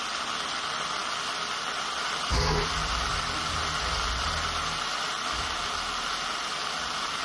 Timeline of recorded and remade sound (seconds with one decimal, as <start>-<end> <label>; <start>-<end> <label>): 0.0-7.2 recorded